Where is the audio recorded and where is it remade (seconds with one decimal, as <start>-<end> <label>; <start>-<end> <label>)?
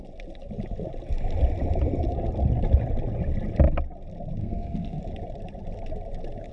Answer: 0.0-4.4 recorded; 4.4-5.0 remade; 5.0-6.5 recorded